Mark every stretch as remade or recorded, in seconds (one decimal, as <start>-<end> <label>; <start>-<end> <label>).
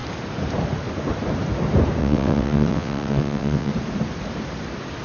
0.0-2.0 recorded; 2.0-3.7 remade; 3.7-5.0 recorded